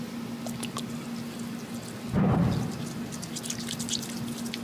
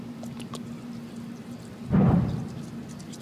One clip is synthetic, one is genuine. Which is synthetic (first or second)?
second